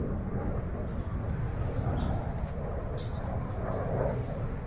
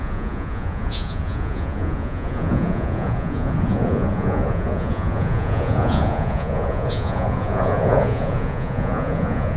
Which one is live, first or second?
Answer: first